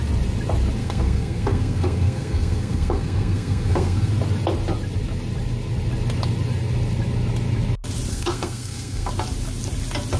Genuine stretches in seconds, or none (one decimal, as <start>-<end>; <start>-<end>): 0.0-0.8; 4.1-8.1; 9.1-10.2